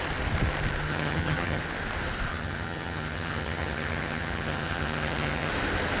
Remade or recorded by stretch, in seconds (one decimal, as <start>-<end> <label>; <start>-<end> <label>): 0.0-0.9 recorded; 0.9-1.6 remade; 1.6-2.3 recorded; 2.3-5.5 remade; 5.5-6.0 recorded